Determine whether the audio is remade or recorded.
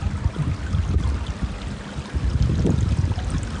recorded